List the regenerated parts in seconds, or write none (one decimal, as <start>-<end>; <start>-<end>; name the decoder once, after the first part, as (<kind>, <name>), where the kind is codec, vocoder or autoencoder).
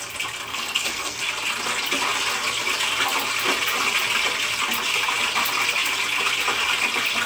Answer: 0.5-1.2 (codec, SNAC)